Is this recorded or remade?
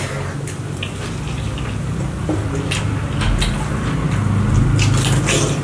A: recorded